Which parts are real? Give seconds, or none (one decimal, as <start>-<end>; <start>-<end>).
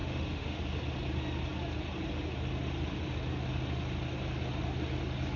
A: 0.6-5.4